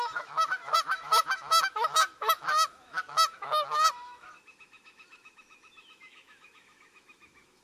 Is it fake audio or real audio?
fake